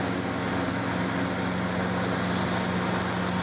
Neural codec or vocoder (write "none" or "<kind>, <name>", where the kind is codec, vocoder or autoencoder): none